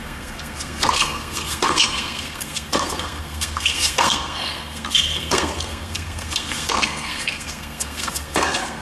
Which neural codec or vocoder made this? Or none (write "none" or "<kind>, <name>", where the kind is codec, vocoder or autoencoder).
codec, SNAC